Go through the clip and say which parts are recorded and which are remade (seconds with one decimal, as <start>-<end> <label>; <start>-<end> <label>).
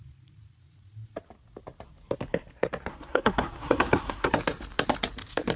0.0-2.9 recorded; 2.9-4.3 remade; 4.3-5.6 recorded